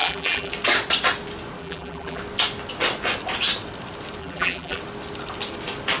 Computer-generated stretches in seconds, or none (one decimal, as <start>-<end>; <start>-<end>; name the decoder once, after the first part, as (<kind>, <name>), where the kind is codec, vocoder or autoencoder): 0.0-0.5 (vocoder, BigVGAN v2); 1.6-2.2; 4.2-4.8